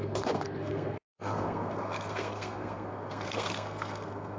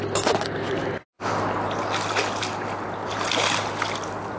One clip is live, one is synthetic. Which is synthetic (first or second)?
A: first